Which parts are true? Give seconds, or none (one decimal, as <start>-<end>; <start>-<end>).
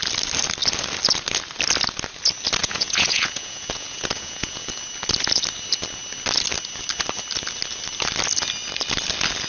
0.0-2.6; 4.7-9.5